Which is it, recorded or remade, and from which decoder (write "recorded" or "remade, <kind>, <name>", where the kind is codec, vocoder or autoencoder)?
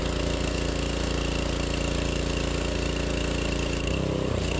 remade, vocoder, BigVGAN v2